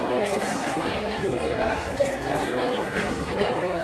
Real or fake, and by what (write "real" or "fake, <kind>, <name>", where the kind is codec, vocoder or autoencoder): fake, codec, SNAC